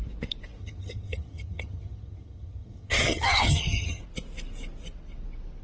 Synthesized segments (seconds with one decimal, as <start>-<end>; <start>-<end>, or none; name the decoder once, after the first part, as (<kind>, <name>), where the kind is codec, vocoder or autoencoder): 0.6-4.0 (vocoder, HiFi-GAN)